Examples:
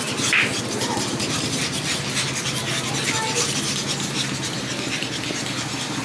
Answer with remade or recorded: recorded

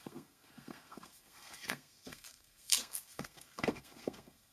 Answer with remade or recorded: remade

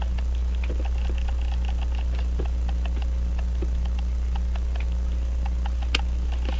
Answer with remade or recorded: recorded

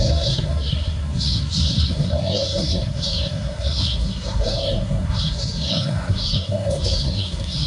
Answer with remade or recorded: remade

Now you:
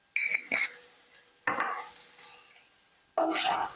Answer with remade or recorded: recorded